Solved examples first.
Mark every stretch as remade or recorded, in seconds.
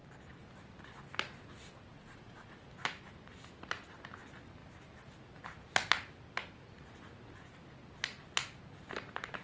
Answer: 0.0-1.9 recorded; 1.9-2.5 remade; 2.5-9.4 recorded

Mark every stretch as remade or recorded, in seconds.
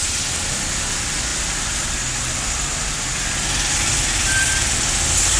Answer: 0.0-5.4 recorded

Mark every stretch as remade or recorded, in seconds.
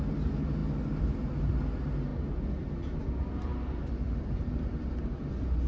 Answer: 0.0-5.7 recorded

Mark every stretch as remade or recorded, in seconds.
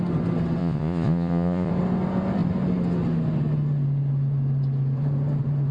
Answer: 0.0-0.6 recorded; 0.6-1.7 remade; 1.7-5.7 recorded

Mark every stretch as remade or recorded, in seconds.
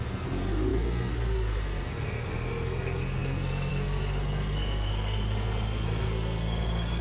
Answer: 0.0-7.0 remade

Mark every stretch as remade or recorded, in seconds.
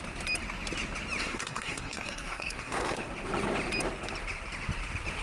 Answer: 0.0-1.2 recorded; 1.2-3.1 remade; 3.1-5.2 recorded